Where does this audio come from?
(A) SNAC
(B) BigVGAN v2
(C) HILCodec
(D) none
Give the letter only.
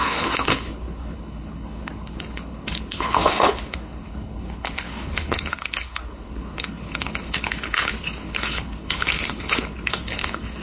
C